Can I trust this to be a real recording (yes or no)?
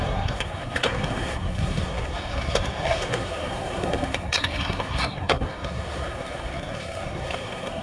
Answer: no